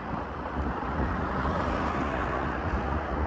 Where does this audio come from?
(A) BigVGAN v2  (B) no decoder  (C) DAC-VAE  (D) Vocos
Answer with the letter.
D